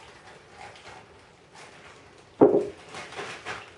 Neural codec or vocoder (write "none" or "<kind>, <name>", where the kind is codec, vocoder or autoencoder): none